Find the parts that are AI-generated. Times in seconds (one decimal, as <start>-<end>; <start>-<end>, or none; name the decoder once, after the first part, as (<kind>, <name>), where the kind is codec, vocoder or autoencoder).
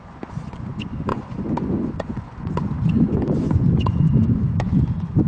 0.0-5.3 (vocoder, Vocos)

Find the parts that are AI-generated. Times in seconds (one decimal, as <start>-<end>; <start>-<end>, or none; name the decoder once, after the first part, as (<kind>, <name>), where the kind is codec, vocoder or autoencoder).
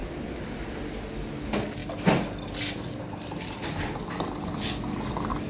0.0-0.8 (vocoder, BigVGAN v2)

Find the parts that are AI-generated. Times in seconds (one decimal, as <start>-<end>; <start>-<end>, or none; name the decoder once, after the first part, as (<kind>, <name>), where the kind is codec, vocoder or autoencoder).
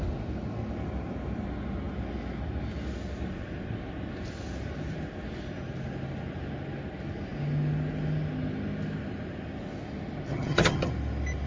10.3-10.9 (vocoder, HiFi-GAN)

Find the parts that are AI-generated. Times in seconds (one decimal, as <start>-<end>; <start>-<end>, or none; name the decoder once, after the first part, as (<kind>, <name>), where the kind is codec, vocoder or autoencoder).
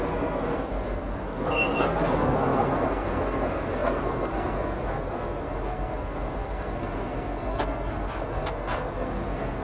0.0-9.6 (codec, SNAC)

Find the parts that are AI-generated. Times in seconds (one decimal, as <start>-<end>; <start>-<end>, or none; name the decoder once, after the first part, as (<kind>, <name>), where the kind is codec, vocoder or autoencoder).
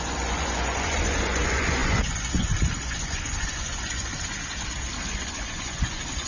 0.0-4.1 (vocoder, Vocos); 5.0-6.3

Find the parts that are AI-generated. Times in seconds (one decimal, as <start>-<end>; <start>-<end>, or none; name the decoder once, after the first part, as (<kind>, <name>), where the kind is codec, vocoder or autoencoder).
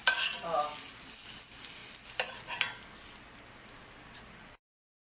none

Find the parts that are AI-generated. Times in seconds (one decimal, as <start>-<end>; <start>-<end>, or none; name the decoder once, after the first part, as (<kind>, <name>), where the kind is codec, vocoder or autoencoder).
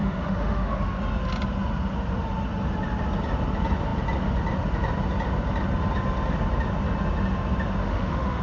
0.0-0.8 (autoencoder, DAC-VAE); 7.8-8.4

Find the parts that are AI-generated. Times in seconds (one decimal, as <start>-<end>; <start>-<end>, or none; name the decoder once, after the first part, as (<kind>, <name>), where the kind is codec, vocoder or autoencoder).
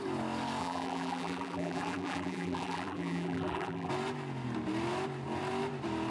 0.6-3.9 (vocoder, BigVGAN v2)